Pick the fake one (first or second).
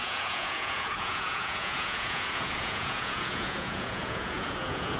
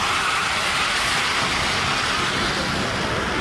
first